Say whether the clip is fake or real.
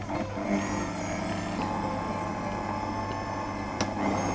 real